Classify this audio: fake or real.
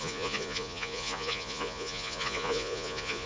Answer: fake